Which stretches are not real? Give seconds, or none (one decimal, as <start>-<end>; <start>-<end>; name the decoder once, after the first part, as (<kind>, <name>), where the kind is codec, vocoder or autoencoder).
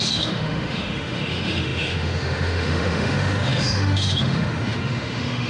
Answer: 0.0-5.5 (autoencoder, DAC-VAE)